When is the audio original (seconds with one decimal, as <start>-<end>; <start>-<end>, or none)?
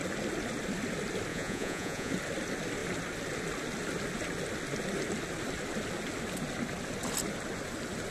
0.0-1.3; 2.1-8.1